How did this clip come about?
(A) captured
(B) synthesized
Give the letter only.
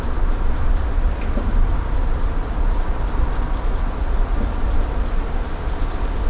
A